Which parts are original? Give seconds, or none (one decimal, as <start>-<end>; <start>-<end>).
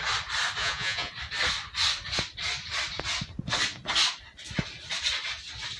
0.0-0.6; 1.1-5.8